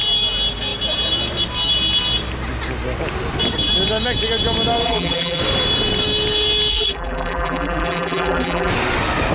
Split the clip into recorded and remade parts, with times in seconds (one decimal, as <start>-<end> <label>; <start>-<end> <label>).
0.0-4.8 recorded; 4.8-5.4 remade; 5.4-6.7 recorded; 6.7-8.7 remade; 8.7-9.3 recorded